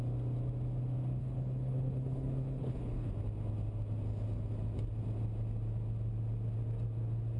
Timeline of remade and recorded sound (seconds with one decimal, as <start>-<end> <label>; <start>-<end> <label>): 0.0-1.2 recorded; 1.2-3.1 remade; 3.1-7.4 recorded